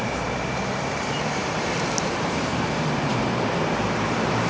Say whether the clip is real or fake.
fake